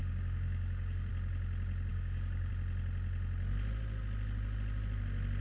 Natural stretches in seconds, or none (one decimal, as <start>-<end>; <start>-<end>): 1.1-1.9; 2.5-5.4